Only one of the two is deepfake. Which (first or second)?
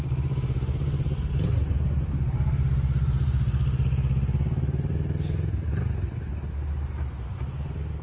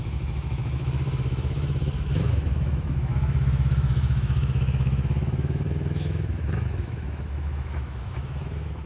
second